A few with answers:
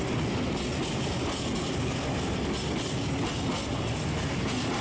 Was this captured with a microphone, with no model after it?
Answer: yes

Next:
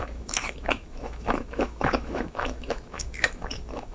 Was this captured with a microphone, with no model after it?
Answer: no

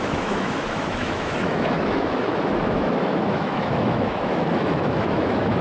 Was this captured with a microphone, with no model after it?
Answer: no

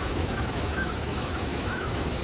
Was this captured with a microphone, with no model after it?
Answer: no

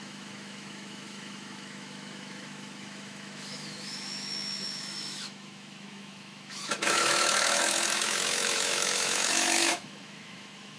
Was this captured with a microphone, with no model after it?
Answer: no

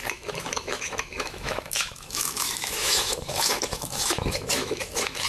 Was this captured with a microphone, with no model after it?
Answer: no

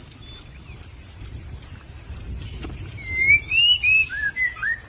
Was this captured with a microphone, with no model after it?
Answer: yes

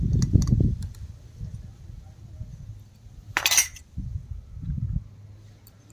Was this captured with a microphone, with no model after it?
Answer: yes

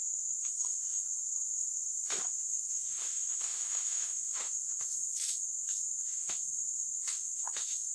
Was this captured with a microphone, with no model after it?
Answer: no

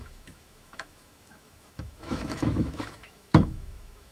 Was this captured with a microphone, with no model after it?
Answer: no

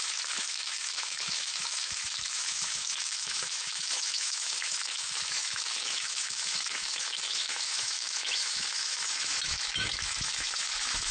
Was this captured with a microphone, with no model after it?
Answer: no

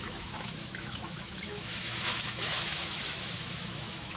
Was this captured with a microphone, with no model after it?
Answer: no